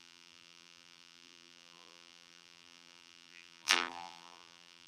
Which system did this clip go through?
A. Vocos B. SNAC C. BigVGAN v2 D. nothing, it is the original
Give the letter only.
C